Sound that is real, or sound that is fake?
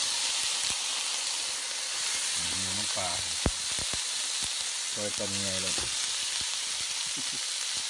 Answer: real